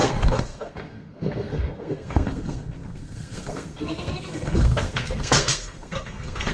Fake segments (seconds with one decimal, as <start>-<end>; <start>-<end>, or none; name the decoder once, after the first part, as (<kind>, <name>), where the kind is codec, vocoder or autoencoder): 0.0-6.5 (codec, SNAC)